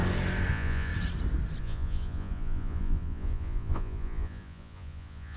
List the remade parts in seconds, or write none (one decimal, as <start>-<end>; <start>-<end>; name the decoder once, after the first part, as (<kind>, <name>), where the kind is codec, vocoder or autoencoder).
0.5-0.9 (vocoder, Vocos); 1.6-5.4